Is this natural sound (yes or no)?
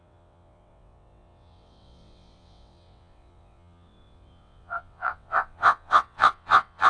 no